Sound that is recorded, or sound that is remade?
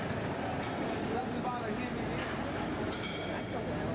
recorded